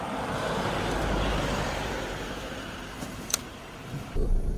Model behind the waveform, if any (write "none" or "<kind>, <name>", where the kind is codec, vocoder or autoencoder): vocoder, BigVGAN v2